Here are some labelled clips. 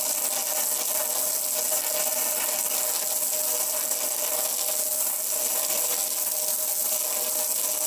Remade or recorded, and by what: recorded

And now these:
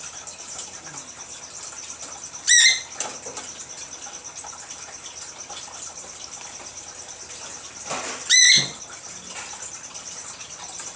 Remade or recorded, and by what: recorded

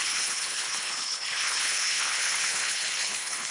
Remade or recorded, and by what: remade, codec, HILCodec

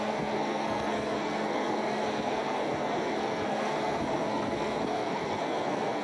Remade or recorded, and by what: remade, codec, SNAC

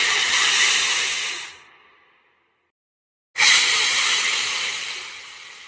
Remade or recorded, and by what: recorded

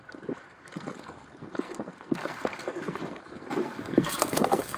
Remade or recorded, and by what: remade, codec, SNAC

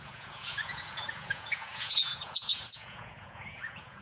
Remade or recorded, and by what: remade, vocoder, Vocos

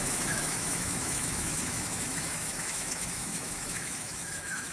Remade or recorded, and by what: remade, autoencoder, DAC-VAE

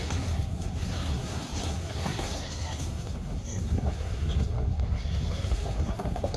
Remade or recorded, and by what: remade, codec, SNAC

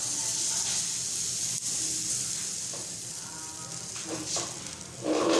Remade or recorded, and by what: recorded